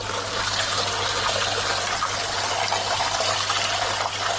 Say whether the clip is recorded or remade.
recorded